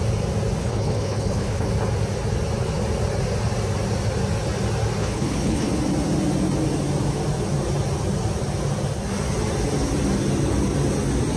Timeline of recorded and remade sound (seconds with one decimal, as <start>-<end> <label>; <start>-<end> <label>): 0.0-0.6 recorded; 0.6-1.7 remade; 1.7-5.0 recorded; 5.0-5.8 remade; 5.8-11.4 recorded